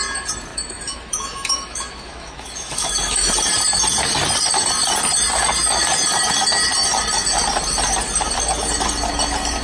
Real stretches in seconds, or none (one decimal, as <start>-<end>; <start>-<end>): 0.0-0.5; 3.3-9.6